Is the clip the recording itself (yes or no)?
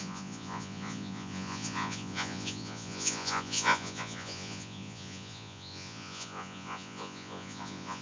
no